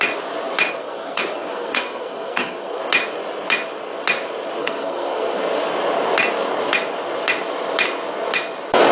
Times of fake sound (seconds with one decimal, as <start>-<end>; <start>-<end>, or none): 0.7-2.8; 4.6-5.4

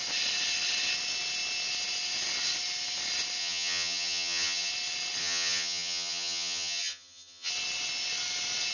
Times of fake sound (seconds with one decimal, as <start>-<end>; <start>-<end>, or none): 3.4-4.7; 5.2-7.5

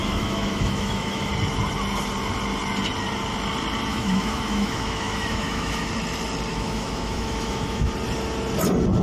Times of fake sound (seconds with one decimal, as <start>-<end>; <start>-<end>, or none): 0.0-1.3; 3.9-5.9; 6.5-7.9

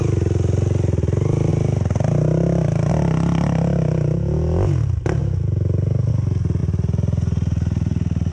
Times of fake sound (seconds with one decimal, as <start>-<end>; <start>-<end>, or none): 6.6-8.3

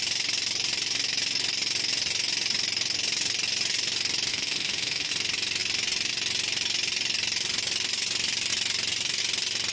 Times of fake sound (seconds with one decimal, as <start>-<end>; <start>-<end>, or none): 4.3-5.1

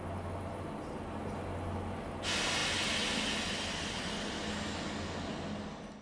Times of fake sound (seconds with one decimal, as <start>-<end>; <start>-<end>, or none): none